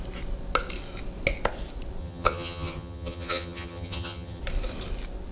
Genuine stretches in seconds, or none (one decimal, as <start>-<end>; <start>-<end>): 0.0-2.0; 4.4-5.3